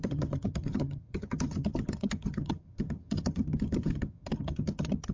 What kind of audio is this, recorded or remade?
remade